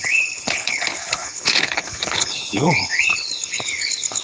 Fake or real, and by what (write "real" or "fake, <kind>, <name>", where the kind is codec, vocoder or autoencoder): fake, codec, HILCodec